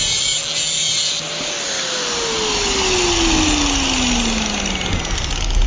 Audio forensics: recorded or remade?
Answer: recorded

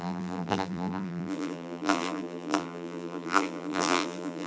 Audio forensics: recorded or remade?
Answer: remade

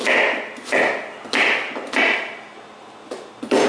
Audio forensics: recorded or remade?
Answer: recorded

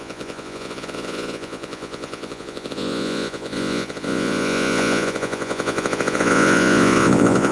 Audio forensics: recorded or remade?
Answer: remade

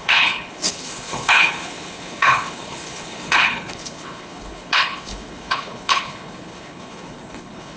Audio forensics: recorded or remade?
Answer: remade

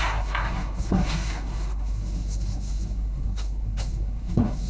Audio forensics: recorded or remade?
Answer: remade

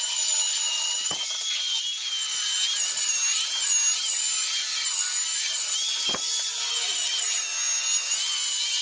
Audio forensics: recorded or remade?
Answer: recorded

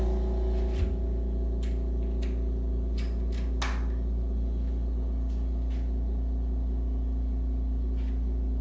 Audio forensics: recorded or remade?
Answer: recorded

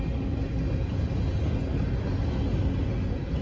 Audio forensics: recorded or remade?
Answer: recorded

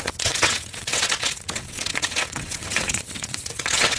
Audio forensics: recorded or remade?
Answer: remade